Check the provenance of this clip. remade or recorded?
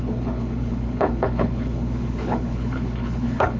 remade